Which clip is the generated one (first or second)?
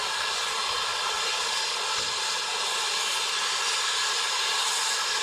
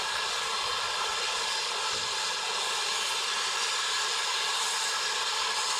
second